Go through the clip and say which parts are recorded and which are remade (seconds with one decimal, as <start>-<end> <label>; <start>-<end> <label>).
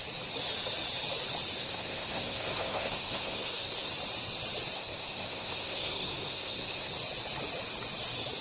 0.0-1.6 recorded; 1.6-3.9 remade; 3.9-4.7 recorded; 4.7-6.9 remade; 6.9-8.4 recorded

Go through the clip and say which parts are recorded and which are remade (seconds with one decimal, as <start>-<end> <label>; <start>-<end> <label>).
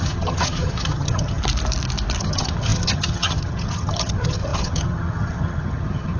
0.0-1.4 remade; 1.4-2.2 recorded; 2.2-6.2 remade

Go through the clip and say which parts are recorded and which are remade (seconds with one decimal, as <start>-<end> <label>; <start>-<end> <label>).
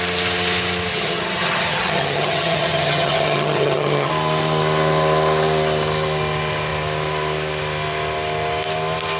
0.0-0.9 recorded; 0.9-4.1 remade; 4.1-9.2 recorded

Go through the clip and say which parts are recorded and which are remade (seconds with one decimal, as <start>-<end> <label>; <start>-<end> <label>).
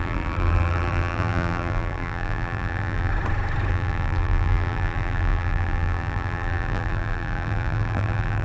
0.0-3.1 remade; 3.1-3.7 recorded; 3.7-8.4 remade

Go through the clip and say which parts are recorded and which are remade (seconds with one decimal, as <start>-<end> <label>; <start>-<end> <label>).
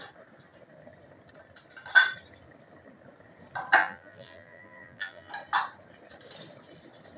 0.0-3.8 recorded; 3.8-5.3 remade; 5.3-7.2 recorded